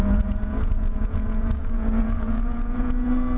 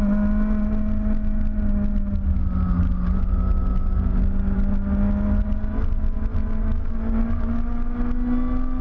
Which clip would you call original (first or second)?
second